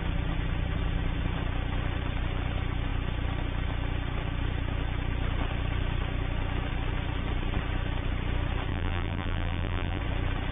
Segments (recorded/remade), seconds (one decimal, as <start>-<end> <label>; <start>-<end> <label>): 0.0-8.7 recorded; 8.7-10.0 remade; 10.0-10.5 recorded